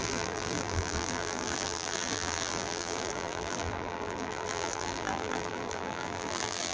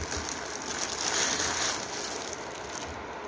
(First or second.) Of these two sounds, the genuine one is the second